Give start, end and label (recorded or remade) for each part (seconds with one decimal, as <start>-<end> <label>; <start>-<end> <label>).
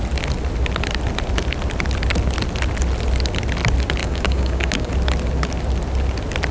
0.0-4.0 recorded; 4.0-4.9 remade; 4.9-6.5 recorded